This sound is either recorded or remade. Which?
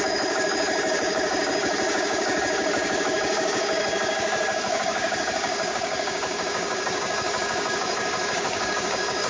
remade